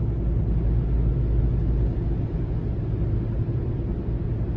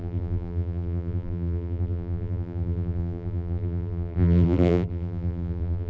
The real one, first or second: first